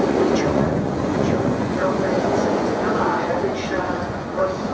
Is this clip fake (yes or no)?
yes